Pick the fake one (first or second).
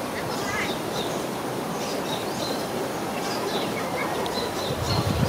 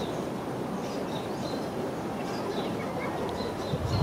first